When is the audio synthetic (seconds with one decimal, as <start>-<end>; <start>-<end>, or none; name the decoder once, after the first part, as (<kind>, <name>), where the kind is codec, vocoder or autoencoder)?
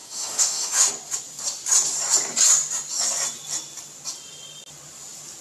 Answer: 0.0-0.9 (autoencoder, DAC-VAE)